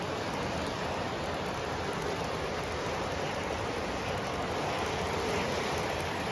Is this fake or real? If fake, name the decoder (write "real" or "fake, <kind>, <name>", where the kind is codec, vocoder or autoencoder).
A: real